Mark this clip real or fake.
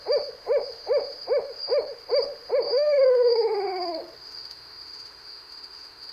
fake